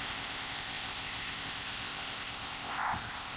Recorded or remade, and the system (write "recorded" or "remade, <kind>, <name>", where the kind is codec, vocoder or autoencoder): remade, codec, ZipCodec